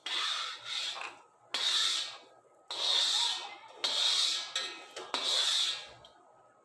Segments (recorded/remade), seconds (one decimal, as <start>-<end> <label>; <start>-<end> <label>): 0.0-6.6 recorded